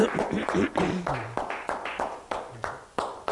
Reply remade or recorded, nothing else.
remade